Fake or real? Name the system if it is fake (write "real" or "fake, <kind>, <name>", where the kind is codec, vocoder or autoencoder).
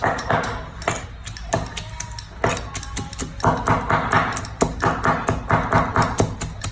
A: real